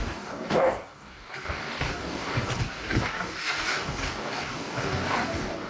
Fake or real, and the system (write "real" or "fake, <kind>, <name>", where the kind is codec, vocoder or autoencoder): fake, codec, DAC